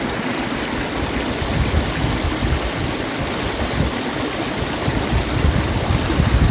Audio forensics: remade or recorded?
recorded